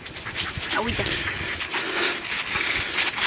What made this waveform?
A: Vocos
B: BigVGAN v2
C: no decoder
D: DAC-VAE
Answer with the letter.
C